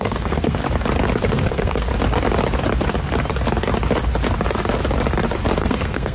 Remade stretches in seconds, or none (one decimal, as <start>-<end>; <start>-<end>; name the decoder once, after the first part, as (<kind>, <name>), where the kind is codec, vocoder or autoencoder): 0.0-0.6 (codec, SNAC); 1.2-1.9; 5.6-6.1

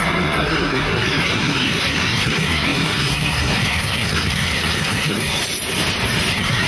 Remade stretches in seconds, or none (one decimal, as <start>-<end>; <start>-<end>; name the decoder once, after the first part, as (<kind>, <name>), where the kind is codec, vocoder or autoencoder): 0.0-5.4 (codec, SNAC); 6.3-6.7

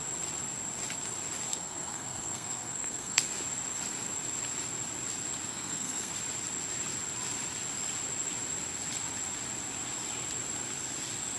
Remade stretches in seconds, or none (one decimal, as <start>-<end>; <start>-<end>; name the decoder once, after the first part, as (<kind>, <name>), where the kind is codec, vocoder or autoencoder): 1.5-3.2 (codec, SNAC); 5.5-6.1

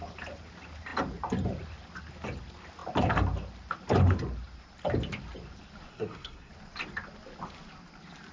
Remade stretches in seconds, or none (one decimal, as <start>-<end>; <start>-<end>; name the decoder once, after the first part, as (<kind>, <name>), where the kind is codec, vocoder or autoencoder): 5.9-6.5 (codec, SNAC)

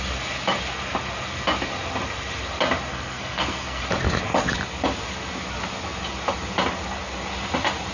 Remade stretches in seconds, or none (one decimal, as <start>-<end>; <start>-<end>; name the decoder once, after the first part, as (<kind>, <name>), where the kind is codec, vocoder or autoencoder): 2.9-3.8 (codec, SNAC)